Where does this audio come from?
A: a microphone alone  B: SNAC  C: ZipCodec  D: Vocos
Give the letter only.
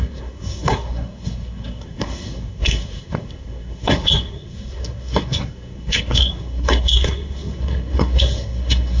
B